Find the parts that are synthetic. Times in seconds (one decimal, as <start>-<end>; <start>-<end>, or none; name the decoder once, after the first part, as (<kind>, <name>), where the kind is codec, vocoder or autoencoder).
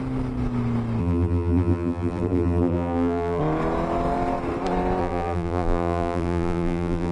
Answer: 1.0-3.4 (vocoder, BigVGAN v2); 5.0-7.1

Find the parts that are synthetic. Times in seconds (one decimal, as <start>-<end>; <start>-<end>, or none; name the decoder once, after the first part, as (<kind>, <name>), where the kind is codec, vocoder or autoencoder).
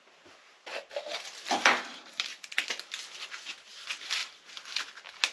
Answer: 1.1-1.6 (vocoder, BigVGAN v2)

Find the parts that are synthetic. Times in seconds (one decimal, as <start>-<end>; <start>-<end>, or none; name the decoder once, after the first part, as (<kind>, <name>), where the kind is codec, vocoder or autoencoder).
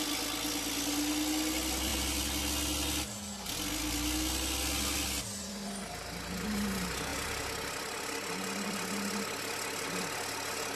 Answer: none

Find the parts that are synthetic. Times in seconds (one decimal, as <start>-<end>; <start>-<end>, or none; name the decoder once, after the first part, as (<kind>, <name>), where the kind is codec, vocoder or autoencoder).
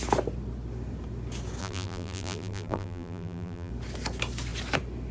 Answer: 1.6-3.7 (vocoder, BigVGAN v2)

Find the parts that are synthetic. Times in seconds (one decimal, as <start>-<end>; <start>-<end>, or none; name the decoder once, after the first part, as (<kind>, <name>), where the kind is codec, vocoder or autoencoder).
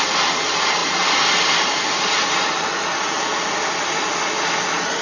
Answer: 0.8-2.8 (vocoder, BigVGAN v2)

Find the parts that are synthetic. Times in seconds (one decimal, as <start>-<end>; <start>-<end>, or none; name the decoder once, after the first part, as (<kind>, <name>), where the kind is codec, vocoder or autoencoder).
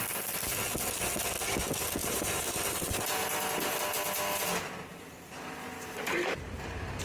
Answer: 2.0-2.9 (vocoder, BigVGAN v2); 4.9-6.4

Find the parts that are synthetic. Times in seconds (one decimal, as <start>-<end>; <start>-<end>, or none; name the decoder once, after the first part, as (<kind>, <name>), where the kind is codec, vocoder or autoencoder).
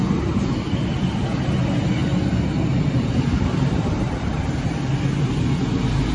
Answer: 3.3-4.9 (vocoder, BigVGAN v2)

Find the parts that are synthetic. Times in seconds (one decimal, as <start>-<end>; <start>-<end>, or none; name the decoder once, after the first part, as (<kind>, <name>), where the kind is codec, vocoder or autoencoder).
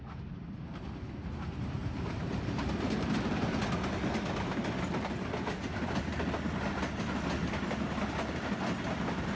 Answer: 1.8-3.2 (vocoder, BigVGAN v2)